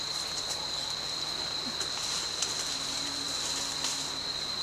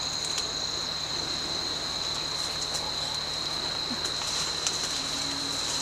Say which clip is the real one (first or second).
second